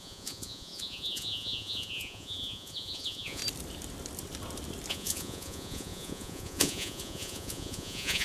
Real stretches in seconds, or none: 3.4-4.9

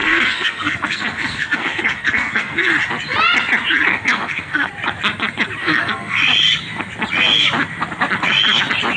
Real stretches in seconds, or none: 2.7-3.9; 4.7-5.6; 6.2-9.0

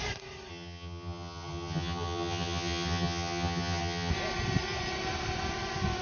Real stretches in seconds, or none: 0.0-0.5; 4.1-6.0

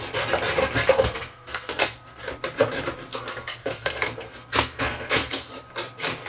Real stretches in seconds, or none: 0.0-0.6; 2.2-3.1; 5.5-6.3

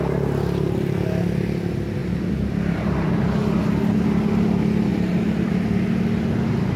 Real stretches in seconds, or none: 0.0-2.0; 3.1-4.9; 5.5-6.8

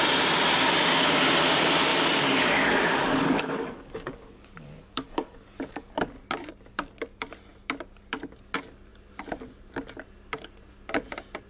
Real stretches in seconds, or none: 0.0-1.9; 5.9-11.5

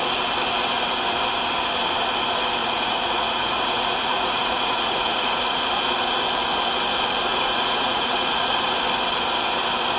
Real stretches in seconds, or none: 0.0-2.6; 5.6-7.3; 8.7-10.0